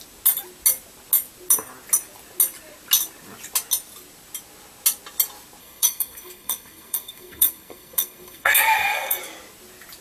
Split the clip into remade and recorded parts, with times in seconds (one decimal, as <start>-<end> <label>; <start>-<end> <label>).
0.0-5.6 recorded; 5.6-9.2 remade; 9.2-10.0 recorded